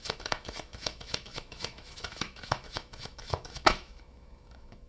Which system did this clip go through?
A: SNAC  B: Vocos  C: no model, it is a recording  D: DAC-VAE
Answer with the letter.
D